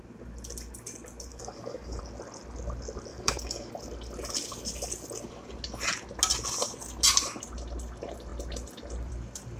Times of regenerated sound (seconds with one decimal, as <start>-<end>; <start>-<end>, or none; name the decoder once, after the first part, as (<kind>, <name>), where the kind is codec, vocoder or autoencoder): 1.3-2.0 (codec, DAC); 3.1-3.7